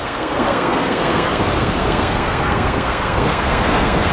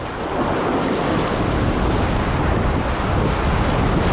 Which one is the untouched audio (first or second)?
second